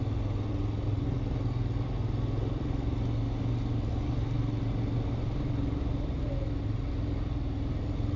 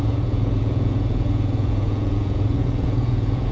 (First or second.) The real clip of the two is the first